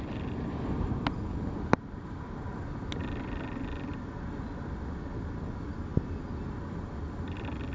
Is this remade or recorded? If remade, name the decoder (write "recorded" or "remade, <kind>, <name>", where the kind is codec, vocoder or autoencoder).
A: recorded